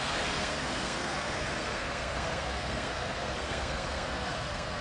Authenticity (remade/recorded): remade